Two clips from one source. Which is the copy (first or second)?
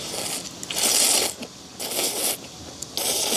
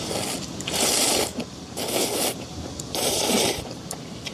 second